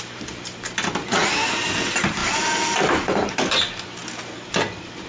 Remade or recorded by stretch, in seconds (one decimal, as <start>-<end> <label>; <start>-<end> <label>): 0.0-1.0 recorded; 1.0-1.6 remade; 1.6-5.1 recorded